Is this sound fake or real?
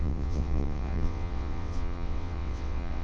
fake